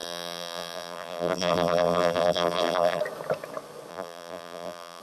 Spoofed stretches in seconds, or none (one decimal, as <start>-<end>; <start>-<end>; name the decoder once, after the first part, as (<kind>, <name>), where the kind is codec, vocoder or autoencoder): 0.0-3.0 (vocoder, BigVGAN v2); 3.9-5.0